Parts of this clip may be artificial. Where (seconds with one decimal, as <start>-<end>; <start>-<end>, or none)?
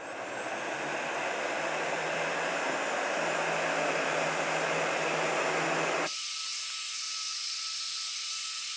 none